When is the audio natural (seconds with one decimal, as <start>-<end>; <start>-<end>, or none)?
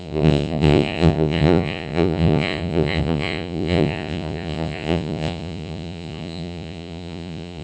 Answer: none